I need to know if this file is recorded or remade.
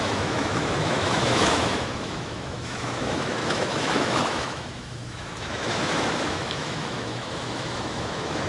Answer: remade